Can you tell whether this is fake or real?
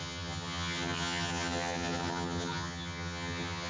fake